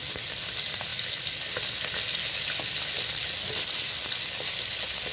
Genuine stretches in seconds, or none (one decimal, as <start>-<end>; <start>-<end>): 0.0-5.1